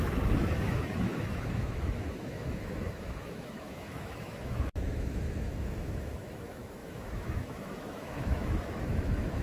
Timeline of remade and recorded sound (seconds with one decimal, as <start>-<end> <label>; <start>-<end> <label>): 0.0-9.4 remade